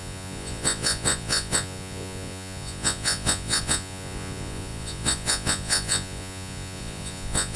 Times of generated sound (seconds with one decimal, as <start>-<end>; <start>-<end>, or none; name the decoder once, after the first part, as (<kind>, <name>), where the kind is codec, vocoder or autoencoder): 0.0-7.6 (vocoder, Vocos)